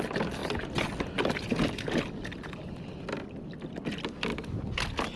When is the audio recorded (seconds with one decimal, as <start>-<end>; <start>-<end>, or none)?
0.0-5.2

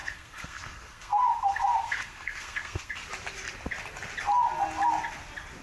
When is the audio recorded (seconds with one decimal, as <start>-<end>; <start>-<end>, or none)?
2.9-5.6

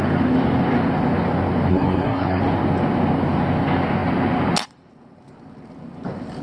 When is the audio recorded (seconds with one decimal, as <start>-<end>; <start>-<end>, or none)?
0.0-1.7; 2.4-6.4

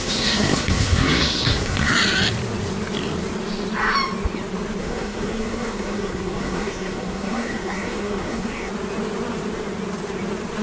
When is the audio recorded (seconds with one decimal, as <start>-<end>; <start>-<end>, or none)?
1.9-4.8; 8.7-10.6

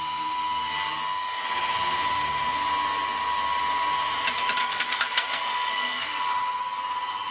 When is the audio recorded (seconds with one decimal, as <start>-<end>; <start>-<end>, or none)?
0.0-4.6; 6.3-7.3

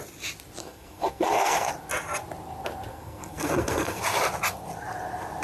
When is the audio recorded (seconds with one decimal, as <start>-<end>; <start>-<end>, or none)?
0.0-0.6; 1.7-2.9; 4.0-5.4

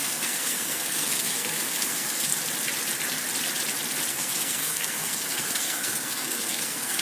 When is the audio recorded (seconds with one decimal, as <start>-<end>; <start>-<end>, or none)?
2.3-4.1

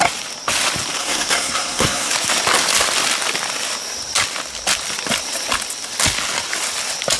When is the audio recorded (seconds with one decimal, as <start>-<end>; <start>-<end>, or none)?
0.0-1.0; 2.1-7.2